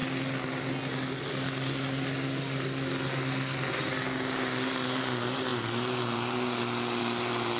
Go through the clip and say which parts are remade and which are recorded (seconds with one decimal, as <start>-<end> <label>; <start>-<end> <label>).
0.0-7.6 recorded